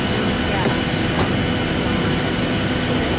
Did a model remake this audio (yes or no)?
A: no